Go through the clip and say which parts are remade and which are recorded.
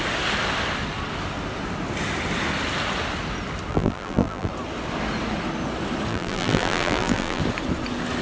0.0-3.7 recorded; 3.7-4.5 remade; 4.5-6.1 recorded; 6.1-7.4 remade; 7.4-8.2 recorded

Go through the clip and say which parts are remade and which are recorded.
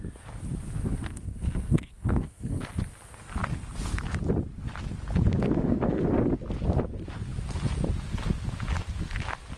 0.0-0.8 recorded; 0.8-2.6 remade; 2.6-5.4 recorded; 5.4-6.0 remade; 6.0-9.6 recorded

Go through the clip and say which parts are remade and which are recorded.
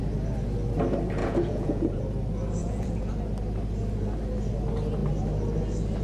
0.0-1.2 recorded; 1.2-2.0 remade; 2.0-2.6 recorded; 2.6-3.1 remade; 3.1-6.0 recorded